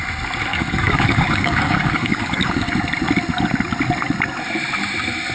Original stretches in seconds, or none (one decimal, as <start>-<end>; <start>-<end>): 0.0-0.5; 2.7-5.3